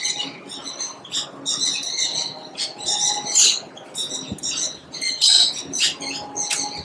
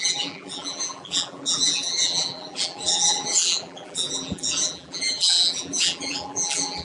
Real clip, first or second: first